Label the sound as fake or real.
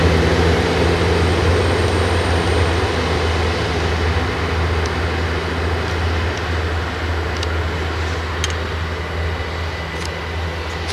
real